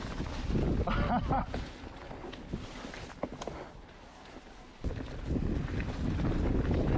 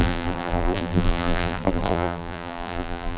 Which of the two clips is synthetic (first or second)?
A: second